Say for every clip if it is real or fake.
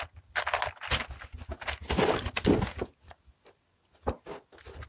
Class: real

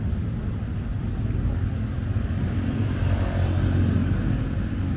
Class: real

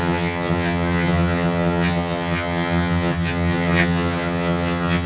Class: fake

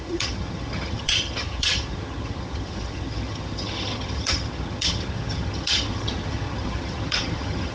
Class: fake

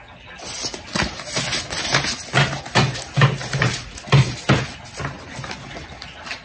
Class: real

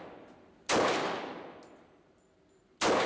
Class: real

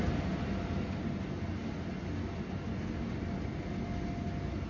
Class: real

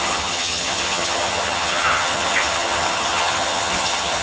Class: fake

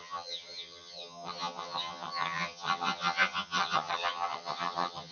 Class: fake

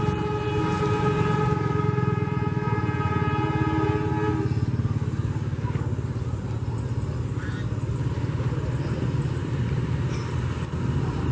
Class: real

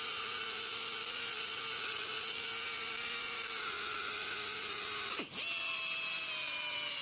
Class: real